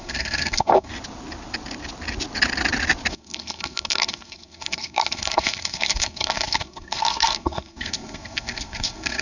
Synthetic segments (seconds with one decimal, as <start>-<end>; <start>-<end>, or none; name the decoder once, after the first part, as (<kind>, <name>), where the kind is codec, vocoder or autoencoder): 0.0-0.9 (codec, SNAC); 3.1-9.2